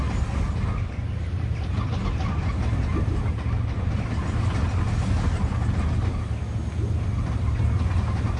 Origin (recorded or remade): recorded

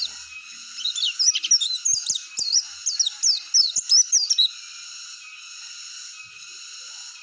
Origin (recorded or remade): recorded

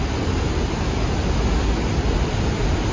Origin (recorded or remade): recorded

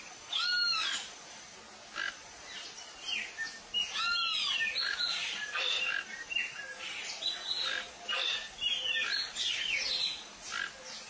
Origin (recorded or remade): recorded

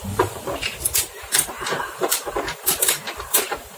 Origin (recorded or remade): remade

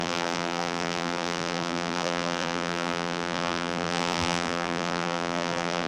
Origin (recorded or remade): remade